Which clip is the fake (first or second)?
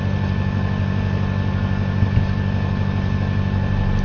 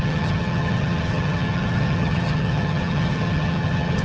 second